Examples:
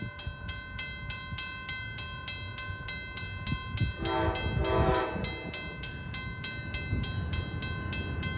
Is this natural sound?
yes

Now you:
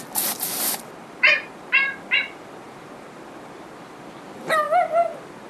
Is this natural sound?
no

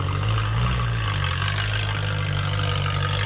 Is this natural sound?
yes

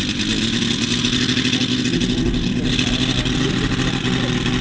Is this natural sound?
yes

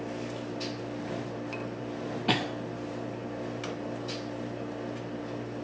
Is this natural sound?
yes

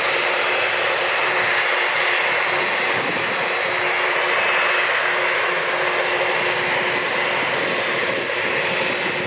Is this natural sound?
yes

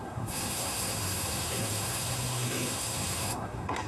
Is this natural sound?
no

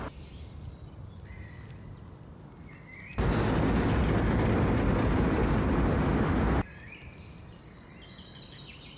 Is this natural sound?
yes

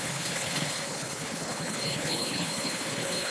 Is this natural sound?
no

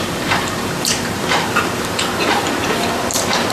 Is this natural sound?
no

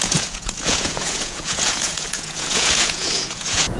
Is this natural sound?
no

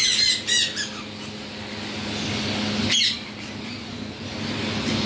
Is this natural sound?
yes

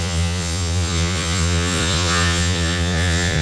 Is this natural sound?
no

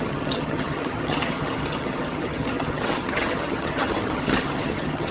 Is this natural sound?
no